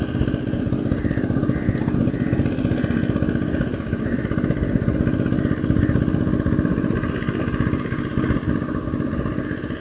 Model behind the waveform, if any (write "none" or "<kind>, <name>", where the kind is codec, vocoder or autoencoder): none